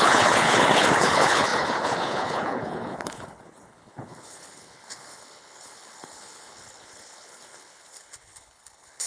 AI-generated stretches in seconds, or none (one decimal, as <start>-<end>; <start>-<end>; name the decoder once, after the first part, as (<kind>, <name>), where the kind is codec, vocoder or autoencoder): 0.0-9.1 (codec, HILCodec)